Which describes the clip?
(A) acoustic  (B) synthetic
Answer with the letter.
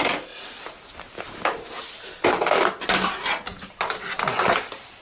A